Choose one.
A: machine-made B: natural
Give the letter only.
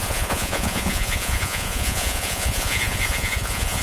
A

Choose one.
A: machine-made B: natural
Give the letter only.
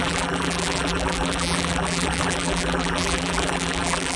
A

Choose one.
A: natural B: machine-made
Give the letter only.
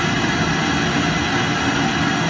A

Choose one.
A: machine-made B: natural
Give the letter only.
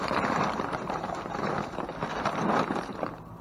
A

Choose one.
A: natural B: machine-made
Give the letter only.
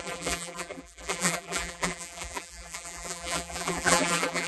B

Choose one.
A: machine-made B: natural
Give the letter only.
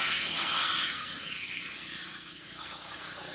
A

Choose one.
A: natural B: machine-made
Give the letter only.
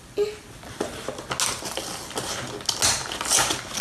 A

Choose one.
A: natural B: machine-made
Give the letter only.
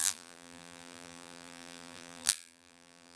B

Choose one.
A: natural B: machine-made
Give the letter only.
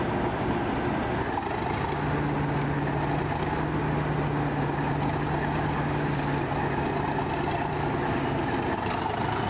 A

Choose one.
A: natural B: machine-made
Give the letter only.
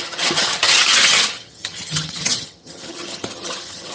B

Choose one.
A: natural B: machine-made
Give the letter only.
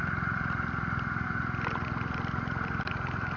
A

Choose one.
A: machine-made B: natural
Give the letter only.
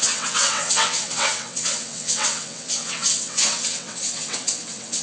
A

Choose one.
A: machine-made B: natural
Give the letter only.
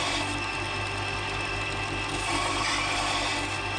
B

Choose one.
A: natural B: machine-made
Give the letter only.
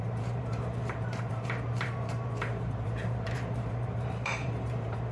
B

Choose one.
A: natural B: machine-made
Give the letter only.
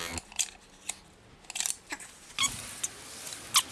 A